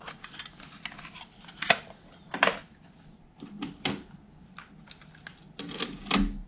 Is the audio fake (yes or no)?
no